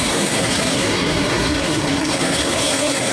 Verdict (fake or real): fake